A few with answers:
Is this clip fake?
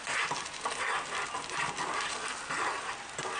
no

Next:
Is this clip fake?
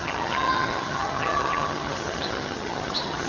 yes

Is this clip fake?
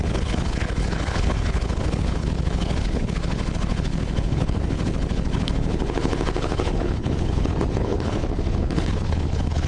yes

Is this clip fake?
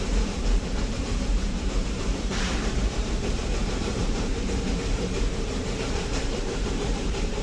yes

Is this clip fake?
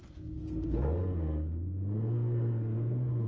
yes